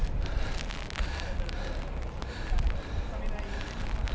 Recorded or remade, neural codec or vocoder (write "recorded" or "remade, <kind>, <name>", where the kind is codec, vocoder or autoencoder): recorded